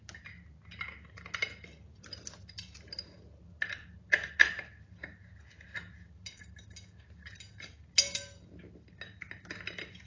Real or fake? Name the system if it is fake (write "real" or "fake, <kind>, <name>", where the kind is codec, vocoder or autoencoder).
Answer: real